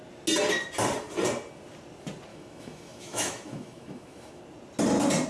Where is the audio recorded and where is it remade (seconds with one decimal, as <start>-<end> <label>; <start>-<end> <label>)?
0.0-2.3 recorded; 2.3-4.4 remade; 4.4-5.3 recorded